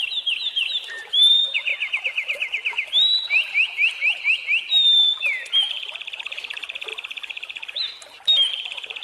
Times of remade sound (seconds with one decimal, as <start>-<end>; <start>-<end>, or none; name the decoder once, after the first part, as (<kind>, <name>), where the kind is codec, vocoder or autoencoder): 0.0-1.7 (vocoder, BigVGAN v2); 5.2-9.0